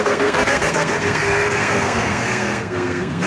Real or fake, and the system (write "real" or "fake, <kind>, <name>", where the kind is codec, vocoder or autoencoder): fake, codec, SNAC